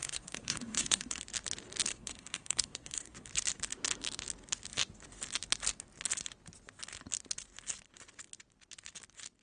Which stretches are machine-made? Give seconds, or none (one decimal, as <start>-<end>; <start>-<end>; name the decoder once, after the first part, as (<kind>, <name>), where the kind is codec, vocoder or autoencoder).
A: 0.0-1.2 (codec, SNAC); 1.9-3.3